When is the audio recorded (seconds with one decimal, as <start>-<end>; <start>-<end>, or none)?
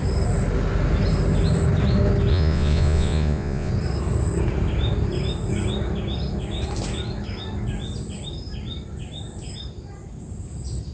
0.0-2.3; 3.7-10.9